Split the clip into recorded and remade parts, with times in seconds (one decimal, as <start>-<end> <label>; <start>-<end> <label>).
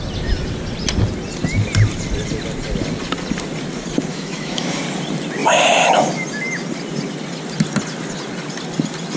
0.0-4.1 recorded; 4.1-4.8 remade; 4.8-9.2 recorded